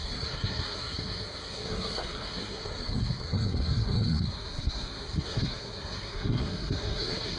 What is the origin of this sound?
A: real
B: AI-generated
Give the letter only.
B